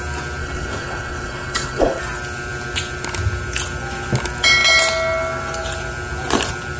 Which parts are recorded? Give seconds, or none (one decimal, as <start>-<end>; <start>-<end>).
0.0-0.4; 2.0-6.8